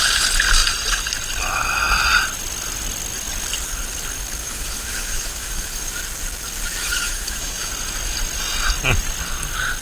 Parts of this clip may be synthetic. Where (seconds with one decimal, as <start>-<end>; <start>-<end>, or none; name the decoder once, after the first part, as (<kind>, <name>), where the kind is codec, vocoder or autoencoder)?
4.4-5.9 (autoencoder, DAC-VAE); 6.8-7.7